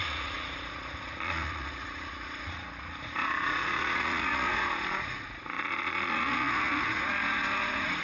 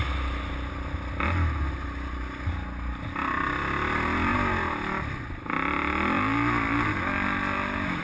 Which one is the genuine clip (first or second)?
second